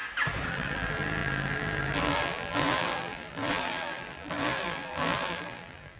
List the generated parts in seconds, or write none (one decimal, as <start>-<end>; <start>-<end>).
0.5-6.0

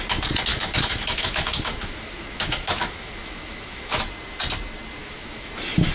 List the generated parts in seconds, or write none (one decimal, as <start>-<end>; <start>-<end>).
0.5-4.0; 5.0-5.5

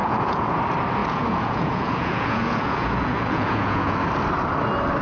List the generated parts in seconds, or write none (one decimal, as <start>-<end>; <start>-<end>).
0.0-0.6; 1.0-4.0

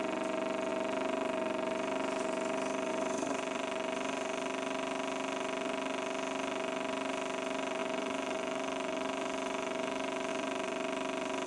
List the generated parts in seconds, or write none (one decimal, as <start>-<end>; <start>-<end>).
7.8-10.3

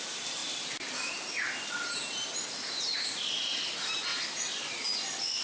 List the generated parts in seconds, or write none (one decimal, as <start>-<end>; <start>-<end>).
none

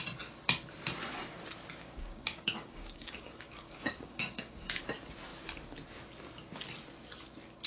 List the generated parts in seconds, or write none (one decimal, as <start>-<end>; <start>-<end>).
1.8-4.8

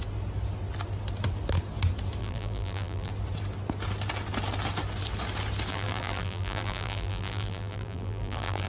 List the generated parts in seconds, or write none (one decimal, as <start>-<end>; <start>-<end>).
2.2-3.1; 5.7-8.7

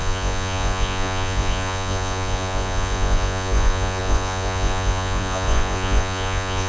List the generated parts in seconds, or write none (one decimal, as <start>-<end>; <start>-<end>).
0.0-6.7